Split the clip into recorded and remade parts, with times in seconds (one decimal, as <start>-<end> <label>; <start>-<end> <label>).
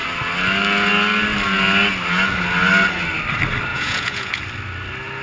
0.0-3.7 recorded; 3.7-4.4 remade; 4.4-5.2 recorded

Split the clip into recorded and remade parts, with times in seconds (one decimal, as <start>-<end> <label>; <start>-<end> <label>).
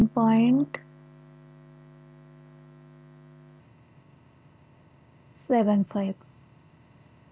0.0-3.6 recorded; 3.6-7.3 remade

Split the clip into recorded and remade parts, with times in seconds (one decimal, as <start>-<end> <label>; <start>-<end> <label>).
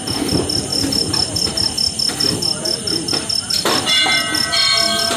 0.0-5.2 recorded